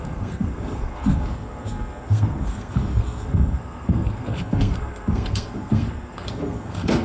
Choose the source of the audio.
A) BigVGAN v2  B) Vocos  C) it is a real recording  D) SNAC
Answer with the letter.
D